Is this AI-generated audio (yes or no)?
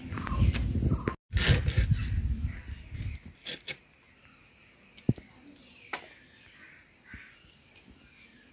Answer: no